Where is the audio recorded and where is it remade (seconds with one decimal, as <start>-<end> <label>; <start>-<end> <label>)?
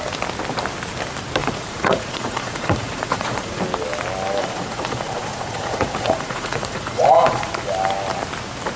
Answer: 0.0-1.4 recorded; 1.4-3.6 remade; 3.6-4.4 recorded; 4.4-7.5 remade; 7.5-8.8 recorded